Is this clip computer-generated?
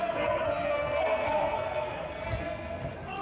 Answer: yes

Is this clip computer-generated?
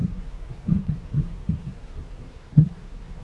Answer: yes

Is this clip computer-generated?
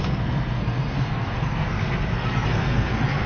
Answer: yes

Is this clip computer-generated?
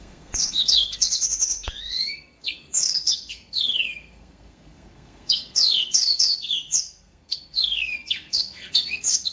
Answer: yes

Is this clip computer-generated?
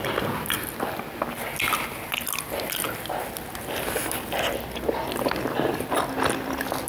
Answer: no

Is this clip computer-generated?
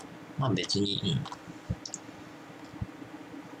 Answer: no